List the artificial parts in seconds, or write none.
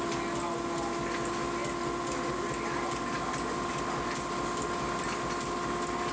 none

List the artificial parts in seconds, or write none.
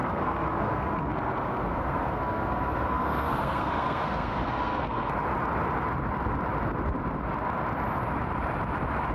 0.0-5.1 (codec, SNAC)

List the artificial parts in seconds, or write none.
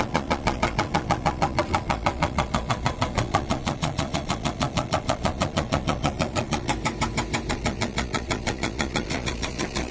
0.0-6.7 (vocoder, Vocos); 7.5-9.9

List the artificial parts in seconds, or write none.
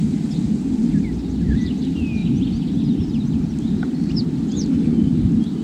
0.0-0.8 (vocoder, BigVGAN v2); 1.5-2.2; 3.1-5.6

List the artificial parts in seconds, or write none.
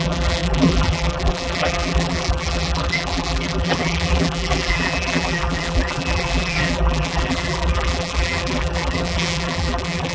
0.0-10.1 (vocoder, BigVGAN v2)